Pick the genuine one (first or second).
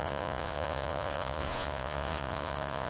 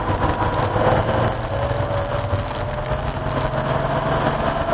second